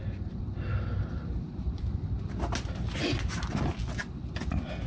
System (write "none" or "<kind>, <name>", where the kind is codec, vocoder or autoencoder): none